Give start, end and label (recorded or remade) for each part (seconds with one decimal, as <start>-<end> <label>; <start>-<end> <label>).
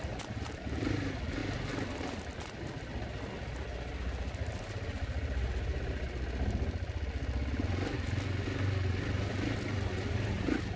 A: 0.0-10.8 recorded